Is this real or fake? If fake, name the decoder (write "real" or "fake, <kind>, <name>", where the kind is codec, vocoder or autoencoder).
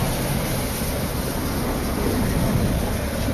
real